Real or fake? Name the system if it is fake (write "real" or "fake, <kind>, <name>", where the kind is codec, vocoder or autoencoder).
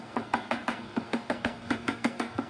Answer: fake, codec, SNAC